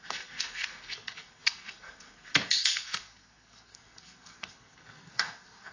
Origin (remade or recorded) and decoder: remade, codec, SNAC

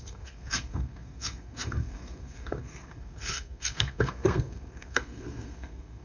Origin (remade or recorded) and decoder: remade, codec, SNAC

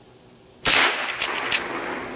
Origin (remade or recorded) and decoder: recorded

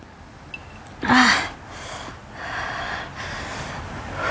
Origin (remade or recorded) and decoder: recorded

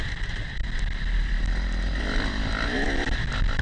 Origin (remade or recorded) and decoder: recorded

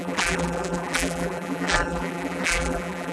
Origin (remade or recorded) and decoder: remade, vocoder, BigVGAN v2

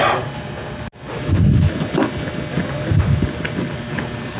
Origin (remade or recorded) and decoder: recorded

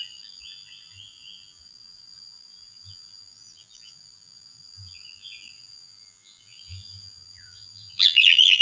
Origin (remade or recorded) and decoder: remade, vocoder, BigVGAN v2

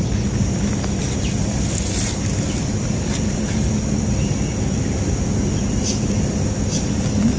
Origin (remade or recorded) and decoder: recorded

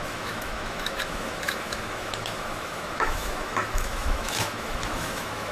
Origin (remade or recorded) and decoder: remade, autoencoder, DAC-VAE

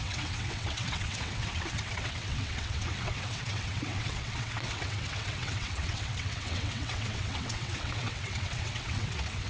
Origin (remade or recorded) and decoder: remade, vocoder, WaveNeXt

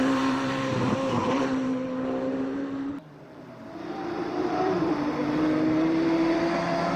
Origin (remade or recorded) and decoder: remade, vocoder, BigVGAN v2